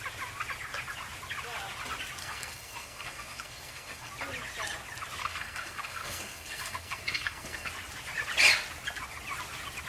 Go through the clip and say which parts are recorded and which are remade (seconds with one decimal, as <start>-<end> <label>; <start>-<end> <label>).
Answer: 0.0-2.2 recorded; 2.2-4.1 remade; 4.1-5.2 recorded; 5.2-7.7 remade; 7.7-9.9 recorded